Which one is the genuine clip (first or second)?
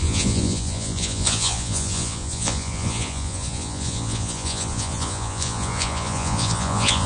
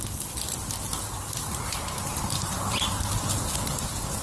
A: second